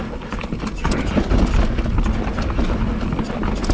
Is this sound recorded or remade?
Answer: recorded